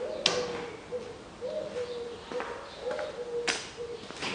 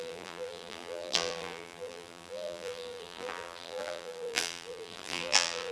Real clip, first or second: first